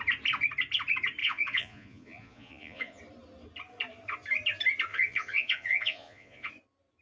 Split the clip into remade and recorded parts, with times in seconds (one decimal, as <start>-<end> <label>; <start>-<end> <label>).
0.0-1.2 recorded; 1.2-3.0 remade; 3.0-4.9 recorded; 4.9-6.5 remade; 6.5-7.0 recorded